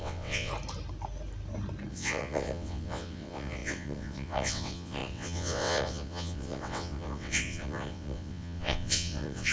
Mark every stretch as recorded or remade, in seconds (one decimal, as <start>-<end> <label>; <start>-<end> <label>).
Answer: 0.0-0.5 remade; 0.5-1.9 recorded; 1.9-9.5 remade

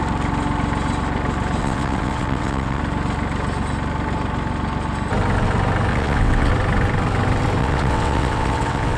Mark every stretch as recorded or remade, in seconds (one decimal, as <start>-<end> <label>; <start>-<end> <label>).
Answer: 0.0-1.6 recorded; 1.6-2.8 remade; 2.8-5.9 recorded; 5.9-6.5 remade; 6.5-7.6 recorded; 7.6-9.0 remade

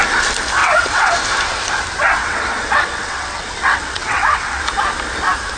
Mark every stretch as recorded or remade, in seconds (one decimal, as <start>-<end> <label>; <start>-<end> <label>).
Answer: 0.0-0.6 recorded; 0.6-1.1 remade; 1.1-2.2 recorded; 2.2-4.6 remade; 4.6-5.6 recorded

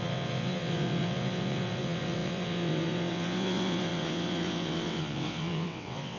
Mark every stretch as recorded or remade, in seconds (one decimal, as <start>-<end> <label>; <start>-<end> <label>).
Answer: 0.0-6.2 remade